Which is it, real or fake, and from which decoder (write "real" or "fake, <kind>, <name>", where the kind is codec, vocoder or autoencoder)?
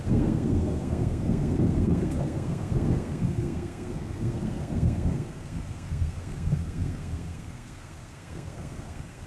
fake, codec, SNAC